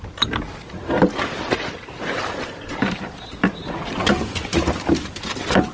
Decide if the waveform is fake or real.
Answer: real